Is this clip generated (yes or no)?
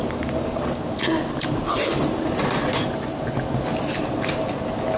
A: no